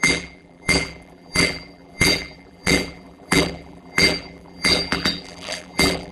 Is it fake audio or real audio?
fake